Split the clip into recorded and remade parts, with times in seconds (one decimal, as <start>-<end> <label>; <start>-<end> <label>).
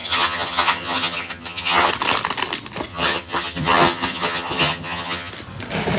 0.0-1.9 remade; 1.9-2.9 recorded; 2.9-5.3 remade; 5.3-6.0 recorded